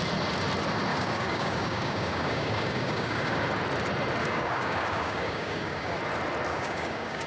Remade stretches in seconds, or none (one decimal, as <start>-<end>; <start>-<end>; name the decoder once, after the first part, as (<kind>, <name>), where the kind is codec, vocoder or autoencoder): 0.9-3.4 (codec, DAC); 4.2-6.0; 6.5-7.3